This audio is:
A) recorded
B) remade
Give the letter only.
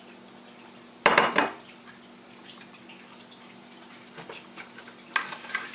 A